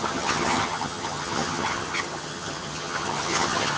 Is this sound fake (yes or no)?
yes